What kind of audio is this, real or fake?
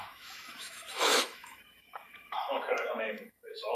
fake